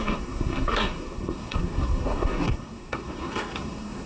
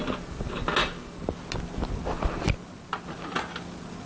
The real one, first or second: second